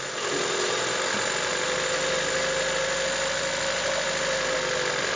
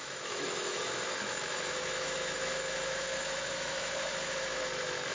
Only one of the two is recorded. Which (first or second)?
first